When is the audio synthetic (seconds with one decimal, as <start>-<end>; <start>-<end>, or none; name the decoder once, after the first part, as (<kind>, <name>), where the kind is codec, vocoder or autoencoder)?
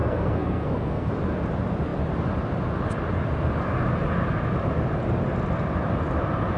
0.0-1.1 (codec, SNAC)